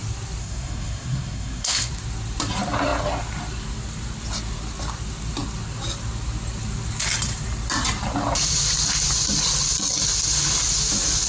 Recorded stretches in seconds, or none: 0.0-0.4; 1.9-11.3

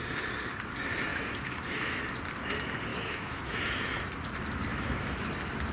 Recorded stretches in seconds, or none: 0.0-1.1; 2.0-2.9; 3.6-4.7; 5.3-5.7

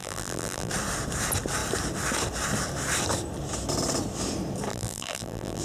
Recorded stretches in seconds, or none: 0.7-4.7

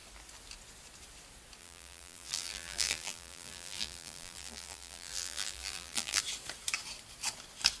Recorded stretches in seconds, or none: 0.0-1.6; 6.2-7.8

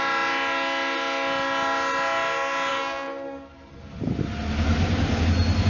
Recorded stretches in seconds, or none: 0.0-2.7; 3.7-5.7

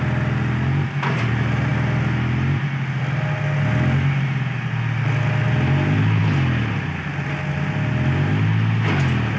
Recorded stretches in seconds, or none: 0.0-9.4

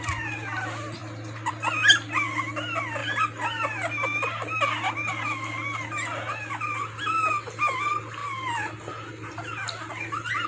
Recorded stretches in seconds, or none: 0.0-10.5

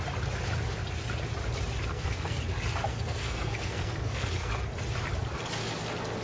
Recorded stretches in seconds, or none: 0.0-1.9; 2.4-2.9; 4.5-6.2